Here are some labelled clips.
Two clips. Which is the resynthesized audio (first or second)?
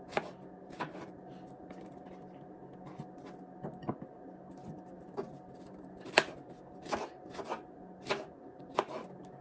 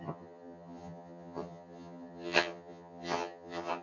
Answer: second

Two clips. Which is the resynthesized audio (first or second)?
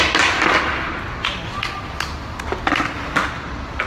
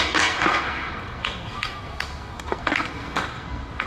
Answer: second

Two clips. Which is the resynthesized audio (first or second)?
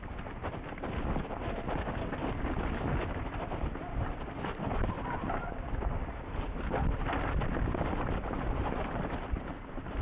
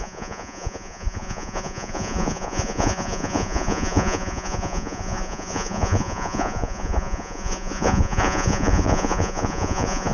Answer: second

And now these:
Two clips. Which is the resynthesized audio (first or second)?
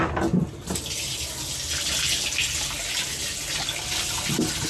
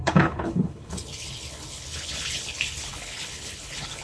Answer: second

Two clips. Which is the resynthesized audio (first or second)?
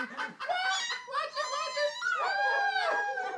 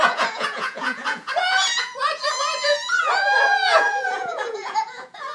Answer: second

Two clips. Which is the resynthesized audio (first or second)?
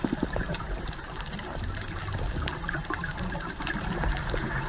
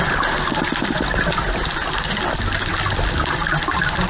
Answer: first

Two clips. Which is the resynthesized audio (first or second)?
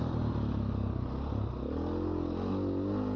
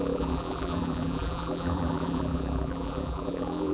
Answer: second